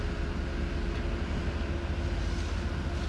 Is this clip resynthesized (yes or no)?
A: no